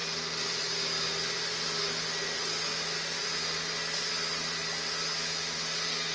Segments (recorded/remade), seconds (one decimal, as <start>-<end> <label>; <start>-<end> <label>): 0.0-6.1 recorded